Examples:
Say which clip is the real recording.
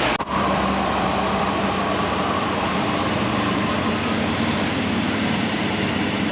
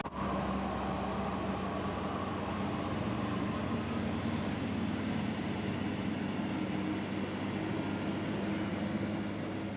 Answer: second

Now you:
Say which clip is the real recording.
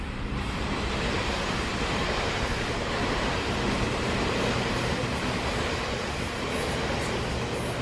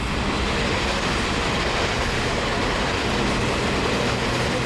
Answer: second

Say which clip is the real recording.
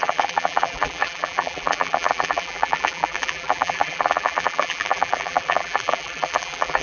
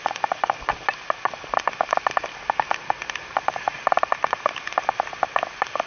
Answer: second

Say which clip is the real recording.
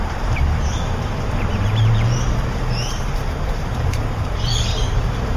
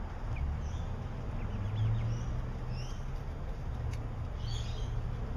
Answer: second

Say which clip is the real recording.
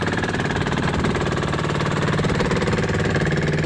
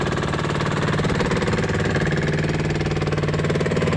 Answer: second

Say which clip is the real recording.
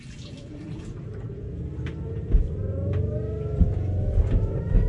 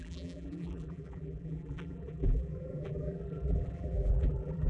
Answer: first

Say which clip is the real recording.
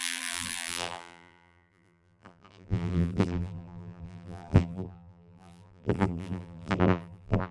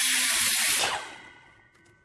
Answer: second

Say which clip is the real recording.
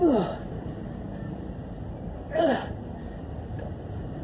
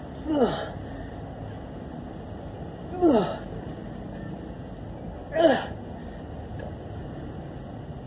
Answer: second